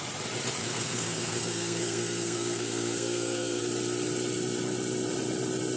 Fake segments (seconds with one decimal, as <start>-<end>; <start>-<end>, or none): 0.6-3.6